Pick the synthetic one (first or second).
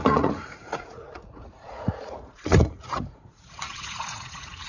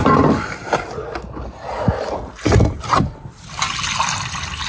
first